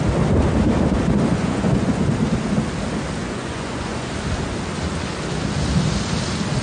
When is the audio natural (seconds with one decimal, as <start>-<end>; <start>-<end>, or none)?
0.0-1.3; 2.1-3.2; 4.1-6.6